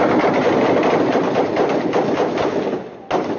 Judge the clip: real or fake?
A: real